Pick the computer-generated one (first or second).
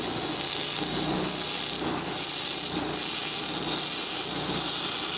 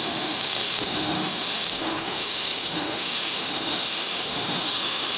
second